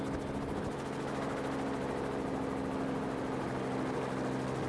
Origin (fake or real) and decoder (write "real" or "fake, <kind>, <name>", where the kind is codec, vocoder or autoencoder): real